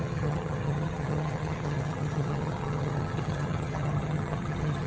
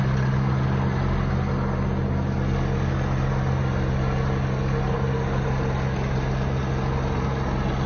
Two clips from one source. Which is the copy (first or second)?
first